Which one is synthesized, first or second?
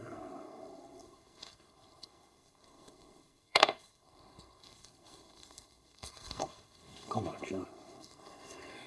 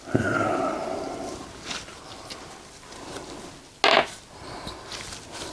first